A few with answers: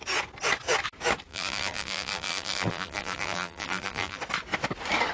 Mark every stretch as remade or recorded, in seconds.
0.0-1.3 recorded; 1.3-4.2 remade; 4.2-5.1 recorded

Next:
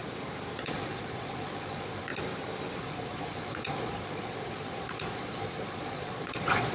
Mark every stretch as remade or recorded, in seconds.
0.0-0.6 recorded; 0.6-2.1 remade; 2.1-2.8 recorded; 2.8-6.7 remade

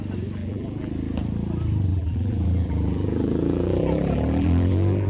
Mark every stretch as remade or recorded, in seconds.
0.0-0.4 recorded; 0.4-0.9 remade; 0.9-1.9 recorded; 1.9-5.1 remade

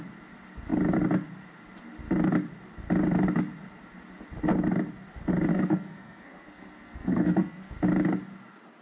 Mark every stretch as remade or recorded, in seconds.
0.0-5.5 recorded; 5.5-7.7 remade; 7.7-8.8 recorded

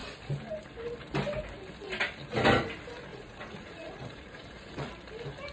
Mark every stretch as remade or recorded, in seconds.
0.0-3.1 recorded; 3.1-4.9 remade; 4.9-5.5 recorded

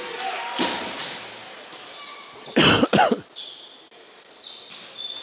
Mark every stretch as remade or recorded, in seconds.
0.0-5.2 recorded

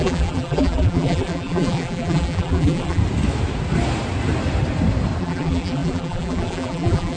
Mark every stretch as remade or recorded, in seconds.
0.0-3.0 remade; 3.0-5.2 recorded; 5.2-7.2 remade

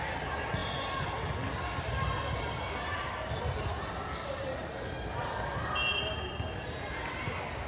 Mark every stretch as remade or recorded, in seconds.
0.0-7.7 recorded